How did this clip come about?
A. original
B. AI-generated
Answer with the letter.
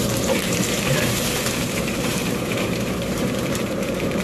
B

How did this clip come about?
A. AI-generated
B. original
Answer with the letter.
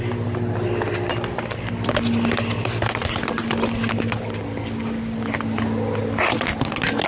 B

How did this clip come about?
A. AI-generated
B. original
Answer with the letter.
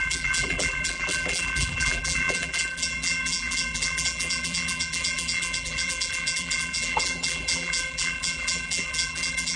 A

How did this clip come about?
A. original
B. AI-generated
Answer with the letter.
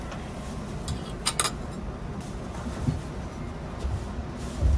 A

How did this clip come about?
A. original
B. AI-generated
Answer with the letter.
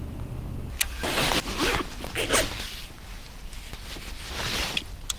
A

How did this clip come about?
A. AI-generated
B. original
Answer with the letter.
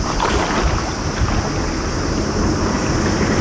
B